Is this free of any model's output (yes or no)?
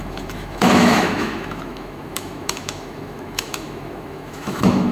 no